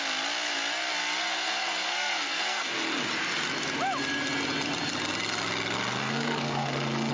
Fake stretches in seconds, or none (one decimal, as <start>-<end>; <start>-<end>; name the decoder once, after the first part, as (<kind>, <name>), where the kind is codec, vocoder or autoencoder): 1.2-2.7 (codec, SNAC); 6.0-7.1